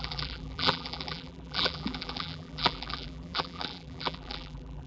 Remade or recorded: remade